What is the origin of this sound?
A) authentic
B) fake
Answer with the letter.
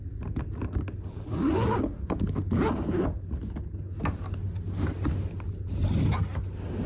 A